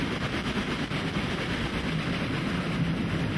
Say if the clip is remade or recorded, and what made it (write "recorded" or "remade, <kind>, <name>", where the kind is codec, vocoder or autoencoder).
recorded